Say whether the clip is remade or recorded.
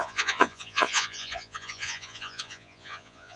remade